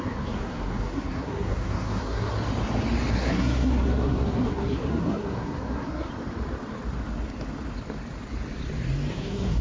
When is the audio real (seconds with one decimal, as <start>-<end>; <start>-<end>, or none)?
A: 2.3-3.1; 6.1-9.1